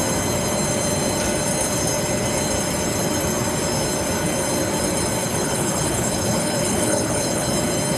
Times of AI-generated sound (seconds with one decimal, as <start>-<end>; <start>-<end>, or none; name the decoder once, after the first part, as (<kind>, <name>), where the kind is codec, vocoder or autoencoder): 5.2-7.5 (codec, HILCodec)